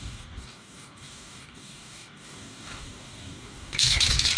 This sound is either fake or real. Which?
fake